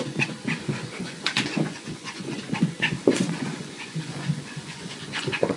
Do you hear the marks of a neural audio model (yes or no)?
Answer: yes